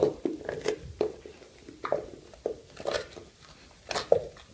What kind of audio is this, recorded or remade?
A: recorded